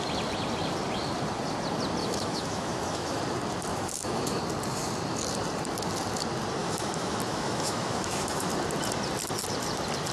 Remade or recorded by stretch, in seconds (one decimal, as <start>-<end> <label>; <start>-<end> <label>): 0.0-2.0 recorded; 2.0-3.2 remade; 3.2-3.7 recorded; 3.7-4.4 remade; 4.4-6.6 recorded; 6.6-8.5 remade; 8.5-10.1 recorded